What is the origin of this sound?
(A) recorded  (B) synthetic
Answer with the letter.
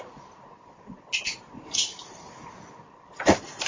A